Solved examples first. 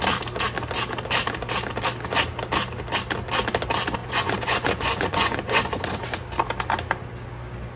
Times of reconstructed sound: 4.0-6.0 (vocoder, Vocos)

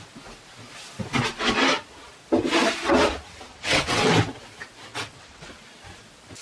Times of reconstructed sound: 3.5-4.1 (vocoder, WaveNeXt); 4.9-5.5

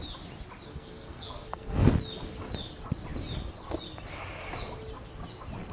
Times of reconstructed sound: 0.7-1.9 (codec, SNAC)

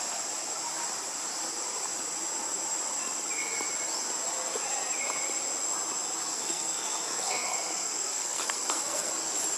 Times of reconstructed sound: 6.3-9.1 (codec, SNAC)

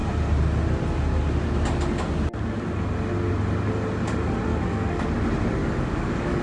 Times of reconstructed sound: 4.5-5.1 (codec, DAC); 5.6-6.4